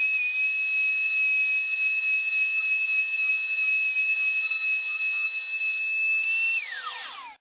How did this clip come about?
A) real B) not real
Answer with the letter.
A